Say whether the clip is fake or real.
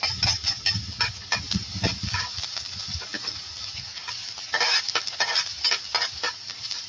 real